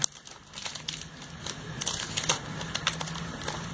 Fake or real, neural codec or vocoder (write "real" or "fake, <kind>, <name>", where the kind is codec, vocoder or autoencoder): real